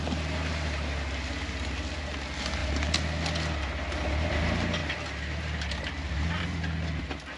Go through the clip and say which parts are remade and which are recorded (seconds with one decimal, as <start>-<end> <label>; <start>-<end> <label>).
0.0-7.4 recorded